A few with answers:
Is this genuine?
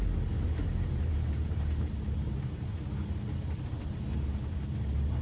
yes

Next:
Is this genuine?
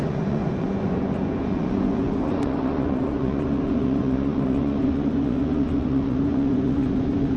no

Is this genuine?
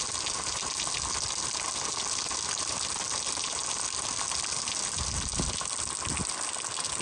yes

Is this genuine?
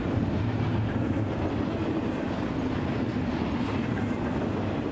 yes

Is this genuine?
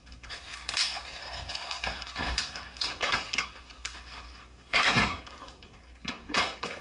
no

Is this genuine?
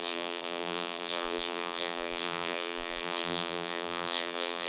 no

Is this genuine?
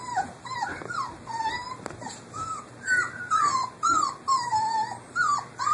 yes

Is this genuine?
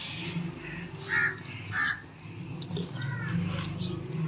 yes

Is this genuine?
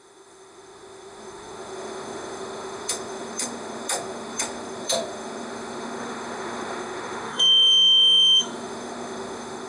no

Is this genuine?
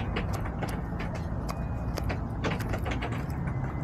yes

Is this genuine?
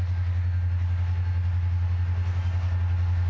yes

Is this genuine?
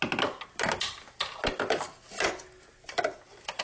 yes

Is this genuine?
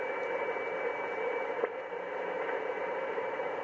no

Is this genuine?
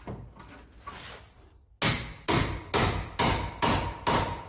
yes